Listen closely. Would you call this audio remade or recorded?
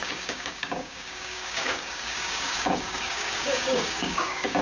remade